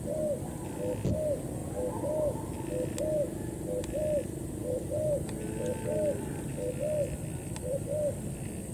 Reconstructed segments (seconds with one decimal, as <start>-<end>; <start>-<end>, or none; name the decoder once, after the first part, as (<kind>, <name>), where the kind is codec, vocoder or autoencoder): none